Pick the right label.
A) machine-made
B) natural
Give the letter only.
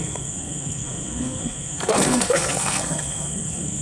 A